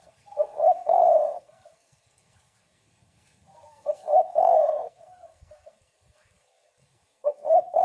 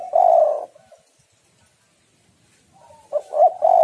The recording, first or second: second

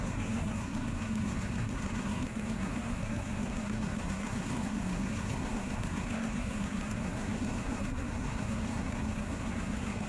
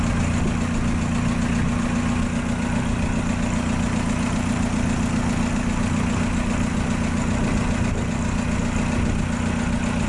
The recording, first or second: second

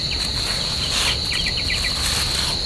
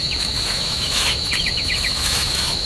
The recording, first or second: first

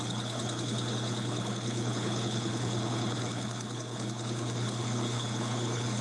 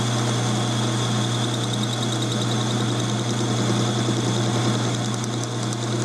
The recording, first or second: second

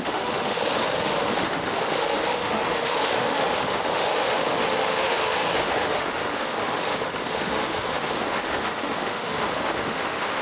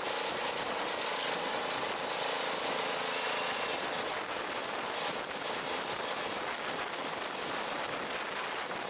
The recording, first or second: second